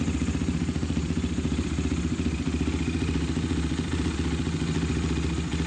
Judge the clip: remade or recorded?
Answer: recorded